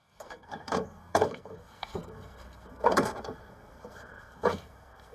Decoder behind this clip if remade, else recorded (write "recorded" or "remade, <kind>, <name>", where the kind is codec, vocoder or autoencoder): remade, codec, SNAC